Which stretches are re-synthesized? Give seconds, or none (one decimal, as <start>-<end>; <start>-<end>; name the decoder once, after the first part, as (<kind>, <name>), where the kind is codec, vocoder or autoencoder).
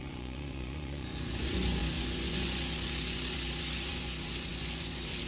0.0-5.3 (vocoder, Vocos)